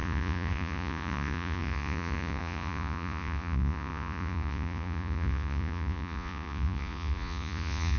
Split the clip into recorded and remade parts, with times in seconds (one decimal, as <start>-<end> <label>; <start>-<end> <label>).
0.0-8.0 remade